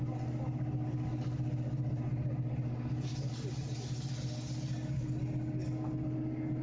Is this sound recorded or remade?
recorded